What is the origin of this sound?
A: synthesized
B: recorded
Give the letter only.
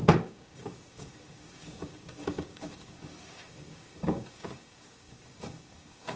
A